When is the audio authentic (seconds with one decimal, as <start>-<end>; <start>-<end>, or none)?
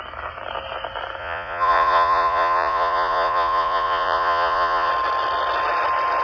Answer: 0.0-1.2; 4.9-6.2